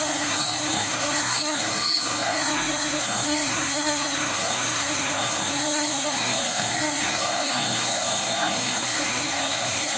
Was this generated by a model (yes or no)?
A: yes